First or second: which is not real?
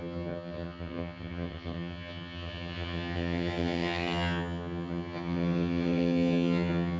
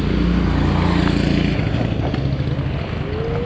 first